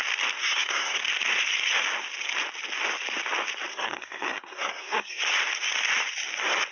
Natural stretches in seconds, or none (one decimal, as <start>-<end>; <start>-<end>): 0.0-0.4; 1.0-3.7; 5.2-6.7